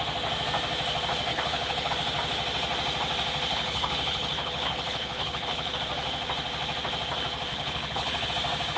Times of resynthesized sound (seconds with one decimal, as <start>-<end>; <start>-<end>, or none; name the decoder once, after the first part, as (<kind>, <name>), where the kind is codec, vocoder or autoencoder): 1.3-1.9 (codec, HILCodec); 3.5-5.8; 7.5-8.3